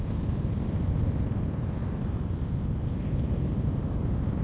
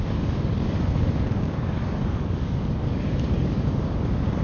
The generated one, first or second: second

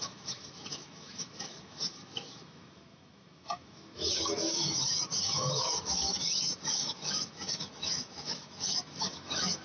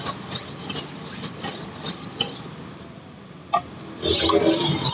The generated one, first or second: first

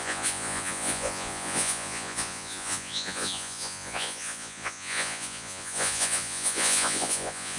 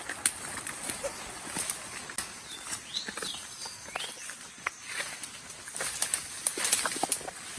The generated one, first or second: first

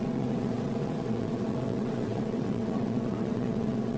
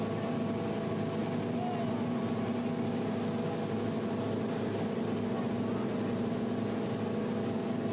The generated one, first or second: first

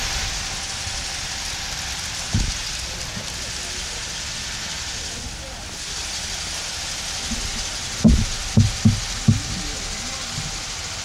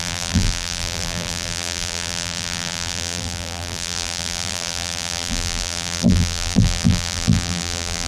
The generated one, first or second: second